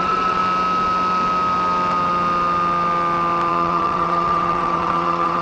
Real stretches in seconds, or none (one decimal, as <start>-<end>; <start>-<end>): 0.4-3.5